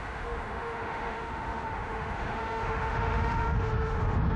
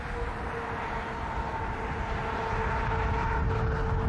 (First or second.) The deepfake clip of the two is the first